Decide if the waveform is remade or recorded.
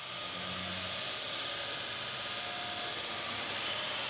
recorded